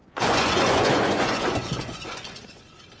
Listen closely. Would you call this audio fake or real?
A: fake